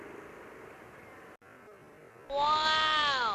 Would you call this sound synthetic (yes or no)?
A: no